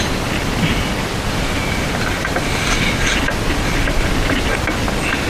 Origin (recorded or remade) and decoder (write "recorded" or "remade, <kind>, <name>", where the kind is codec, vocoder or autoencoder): recorded